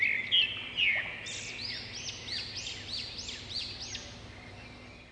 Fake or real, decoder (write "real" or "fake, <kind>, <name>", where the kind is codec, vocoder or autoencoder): real